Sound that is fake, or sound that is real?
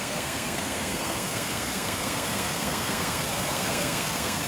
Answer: fake